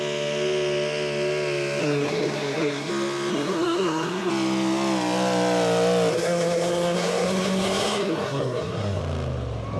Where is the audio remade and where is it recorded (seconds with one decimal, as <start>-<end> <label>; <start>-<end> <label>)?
0.0-1.8 recorded; 1.8-2.9 remade; 2.9-3.3 recorded; 3.3-4.3 remade; 4.3-6.1 recorded; 6.1-9.0 remade; 9.0-9.8 recorded